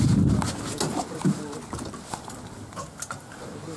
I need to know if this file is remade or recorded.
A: recorded